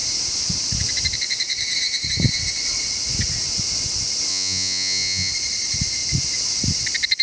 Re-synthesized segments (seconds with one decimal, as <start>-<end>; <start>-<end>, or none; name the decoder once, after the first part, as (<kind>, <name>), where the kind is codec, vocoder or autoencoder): 4.3-5.3 (vocoder, Vocos)